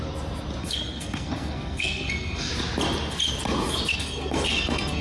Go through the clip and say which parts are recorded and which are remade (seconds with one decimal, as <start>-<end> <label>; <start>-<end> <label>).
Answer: 0.0-0.6 recorded; 0.6-2.5 remade; 2.5-3.9 recorded; 3.9-5.0 remade